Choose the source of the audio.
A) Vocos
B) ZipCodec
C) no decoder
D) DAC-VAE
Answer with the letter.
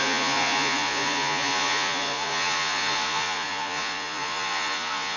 A